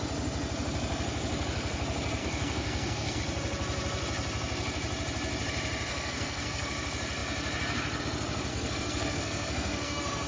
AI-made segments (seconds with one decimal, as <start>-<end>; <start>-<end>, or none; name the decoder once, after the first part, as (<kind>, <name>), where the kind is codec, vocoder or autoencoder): 2.2-3.2 (codec, SNAC); 5.9-6.7; 8.5-10.3

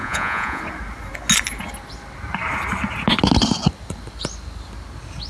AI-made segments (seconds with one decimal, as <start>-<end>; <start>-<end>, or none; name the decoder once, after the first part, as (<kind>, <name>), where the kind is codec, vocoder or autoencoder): 0.0-0.6 (vocoder, Vocos)

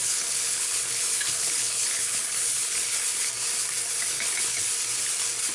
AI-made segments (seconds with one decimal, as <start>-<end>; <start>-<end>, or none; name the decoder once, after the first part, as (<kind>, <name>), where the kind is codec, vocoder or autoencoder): 0.0-3.3 (codec, HILCodec); 4.1-4.7

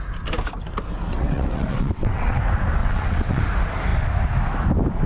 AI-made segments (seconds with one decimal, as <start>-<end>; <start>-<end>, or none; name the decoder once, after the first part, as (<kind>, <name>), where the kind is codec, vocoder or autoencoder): 1.1-2.4 (vocoder, WaveNeXt); 2.8-3.4

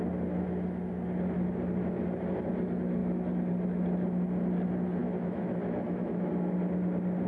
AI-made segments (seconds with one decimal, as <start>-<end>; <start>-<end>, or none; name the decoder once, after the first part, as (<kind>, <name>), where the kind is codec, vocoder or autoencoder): 5.0-6.3 (autoencoder, DAC-VAE)

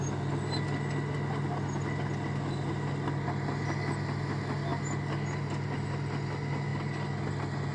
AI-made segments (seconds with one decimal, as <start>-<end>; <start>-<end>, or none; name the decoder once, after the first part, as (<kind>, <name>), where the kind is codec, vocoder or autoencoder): none

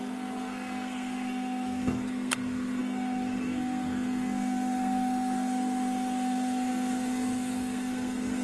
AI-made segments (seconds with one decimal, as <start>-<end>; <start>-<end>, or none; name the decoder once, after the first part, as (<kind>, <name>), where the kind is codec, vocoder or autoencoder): 0.0-8.4 (codec, SNAC)

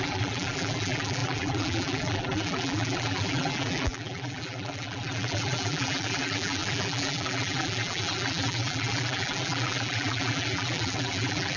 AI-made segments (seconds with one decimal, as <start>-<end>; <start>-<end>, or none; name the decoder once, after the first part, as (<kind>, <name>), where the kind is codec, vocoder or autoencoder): 0.0-11.6 (vocoder, BigVGAN v2)